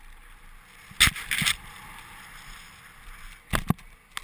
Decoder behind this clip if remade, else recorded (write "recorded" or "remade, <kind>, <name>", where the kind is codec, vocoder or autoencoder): recorded